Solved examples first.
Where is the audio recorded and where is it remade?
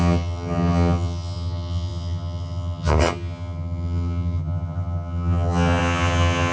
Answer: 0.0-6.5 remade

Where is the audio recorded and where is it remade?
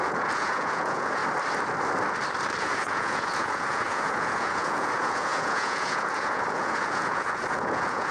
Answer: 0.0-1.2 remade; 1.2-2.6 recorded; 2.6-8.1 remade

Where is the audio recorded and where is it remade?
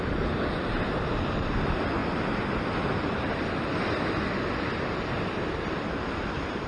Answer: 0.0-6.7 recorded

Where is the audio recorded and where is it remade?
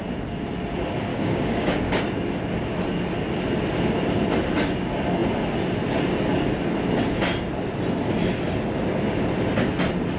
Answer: 0.0-1.1 recorded; 1.1-2.0 remade; 2.0-10.2 recorded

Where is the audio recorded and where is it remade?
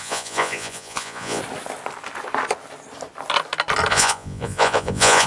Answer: 0.0-1.4 remade; 1.4-3.9 recorded; 3.9-5.3 remade